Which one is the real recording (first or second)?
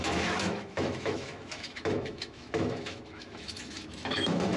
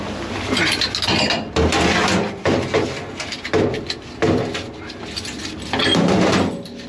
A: second